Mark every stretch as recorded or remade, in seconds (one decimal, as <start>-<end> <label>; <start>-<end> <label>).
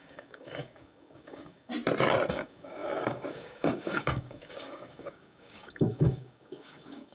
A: 0.0-1.7 remade; 1.7-2.3 recorded; 2.3-7.1 remade